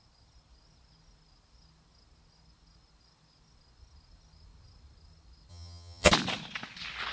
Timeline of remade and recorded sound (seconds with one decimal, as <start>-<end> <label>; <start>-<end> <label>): 0.0-5.5 recorded; 5.5-6.1 remade; 6.1-7.1 recorded